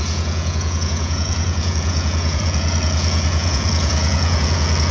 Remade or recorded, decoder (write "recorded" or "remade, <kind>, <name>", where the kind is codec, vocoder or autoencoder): remade, vocoder, Vocos